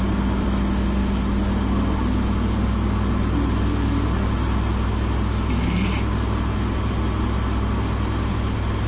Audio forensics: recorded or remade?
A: recorded